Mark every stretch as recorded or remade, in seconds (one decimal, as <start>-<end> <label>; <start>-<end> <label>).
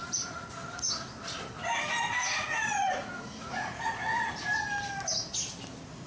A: 0.0-2.2 recorded; 2.2-4.3 remade; 4.3-6.1 recorded